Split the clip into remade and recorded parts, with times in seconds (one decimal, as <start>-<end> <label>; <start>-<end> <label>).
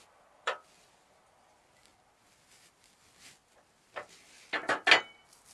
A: 0.0-5.5 recorded